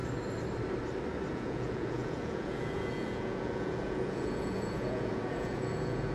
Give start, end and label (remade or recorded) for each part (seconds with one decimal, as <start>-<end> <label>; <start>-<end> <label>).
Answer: 0.0-1.3 recorded; 1.3-6.1 remade